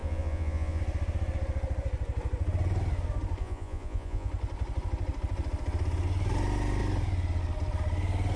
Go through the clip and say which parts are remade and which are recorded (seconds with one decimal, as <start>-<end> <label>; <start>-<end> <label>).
0.0-0.8 remade; 0.8-3.4 recorded; 3.4-4.3 remade; 4.3-8.4 recorded

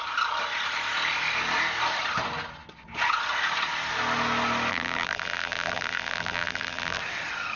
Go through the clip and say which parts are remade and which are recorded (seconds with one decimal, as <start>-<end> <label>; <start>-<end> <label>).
0.0-4.7 recorded; 4.7-7.0 remade; 7.0-7.6 recorded